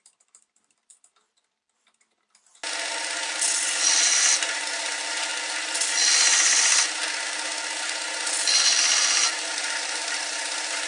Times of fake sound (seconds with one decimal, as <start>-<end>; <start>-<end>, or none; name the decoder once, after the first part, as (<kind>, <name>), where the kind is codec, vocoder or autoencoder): 0.0-0.9 (vocoder, BigVGAN v2); 4.5-5.3; 9.3-10.9